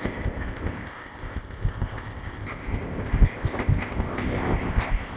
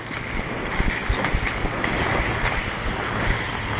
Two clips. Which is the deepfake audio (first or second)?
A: first